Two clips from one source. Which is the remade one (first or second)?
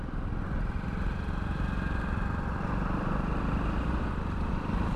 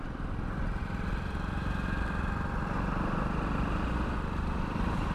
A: first